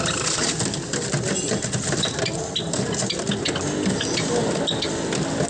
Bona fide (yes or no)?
yes